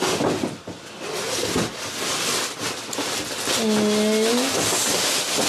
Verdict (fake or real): real